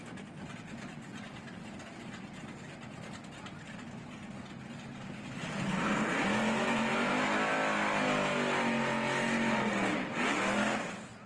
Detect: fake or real real